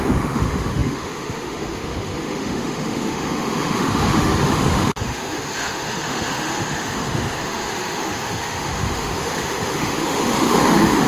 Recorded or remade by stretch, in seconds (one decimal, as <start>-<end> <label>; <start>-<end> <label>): 0.0-11.1 remade